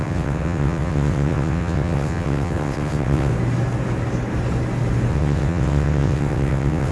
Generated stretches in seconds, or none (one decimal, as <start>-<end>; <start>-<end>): 0.0-3.3; 5.1-6.9